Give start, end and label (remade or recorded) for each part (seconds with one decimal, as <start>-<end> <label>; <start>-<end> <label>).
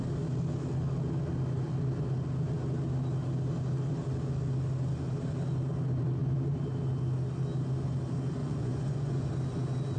0.0-8.4 recorded; 8.4-9.3 remade; 9.3-10.0 recorded